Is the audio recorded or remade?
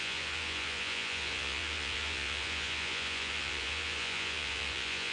remade